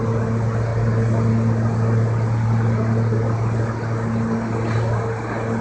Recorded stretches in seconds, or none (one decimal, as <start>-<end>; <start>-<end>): 0.0-5.6